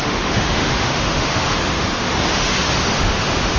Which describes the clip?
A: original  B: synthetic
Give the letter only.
B